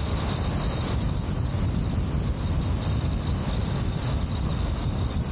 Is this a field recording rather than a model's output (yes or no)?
yes